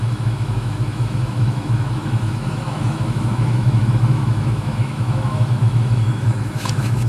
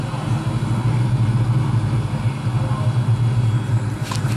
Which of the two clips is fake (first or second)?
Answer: first